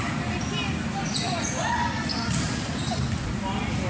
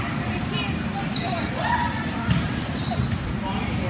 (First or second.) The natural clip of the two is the first